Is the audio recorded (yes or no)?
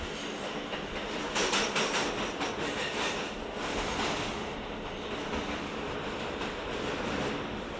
yes